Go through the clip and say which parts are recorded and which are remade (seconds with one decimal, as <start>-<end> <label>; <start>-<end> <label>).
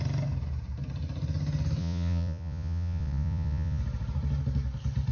0.0-1.8 recorded; 1.8-3.8 remade; 3.8-5.1 recorded